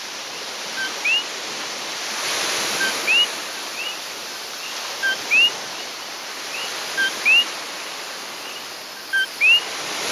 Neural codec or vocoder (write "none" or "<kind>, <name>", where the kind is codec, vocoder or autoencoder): none